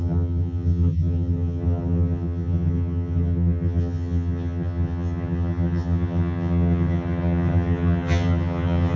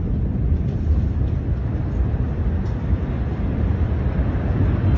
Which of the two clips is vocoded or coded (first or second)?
first